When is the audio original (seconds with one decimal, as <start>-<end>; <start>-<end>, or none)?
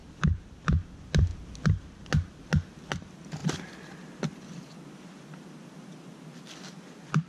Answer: 0.6-7.3